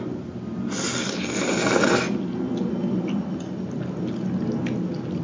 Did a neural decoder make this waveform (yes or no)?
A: no